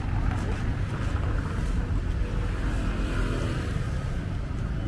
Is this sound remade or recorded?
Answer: recorded